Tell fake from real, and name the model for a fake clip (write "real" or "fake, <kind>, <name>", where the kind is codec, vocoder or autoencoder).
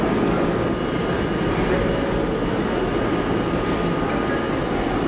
real